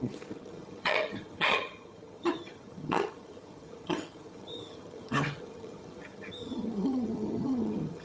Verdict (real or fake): fake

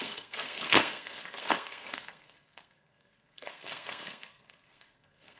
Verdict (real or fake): fake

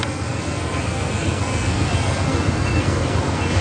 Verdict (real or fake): fake